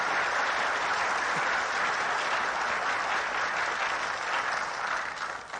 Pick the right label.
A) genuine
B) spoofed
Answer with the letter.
A